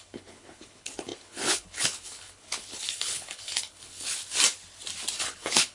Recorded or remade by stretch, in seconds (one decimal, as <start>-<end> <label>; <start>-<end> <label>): 0.0-4.2 remade; 4.2-5.2 recorded; 5.2-5.7 remade